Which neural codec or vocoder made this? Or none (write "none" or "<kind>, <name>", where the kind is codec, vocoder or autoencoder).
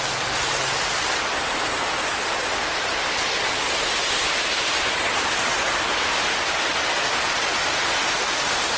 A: none